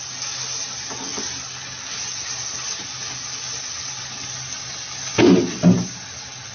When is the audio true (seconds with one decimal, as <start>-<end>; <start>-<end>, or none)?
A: 0.0-6.5